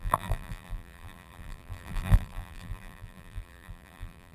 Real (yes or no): no